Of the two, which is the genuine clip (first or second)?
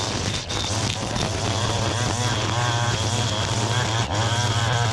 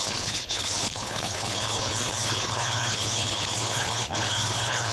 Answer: first